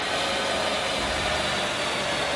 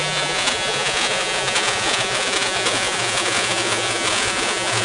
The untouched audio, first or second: first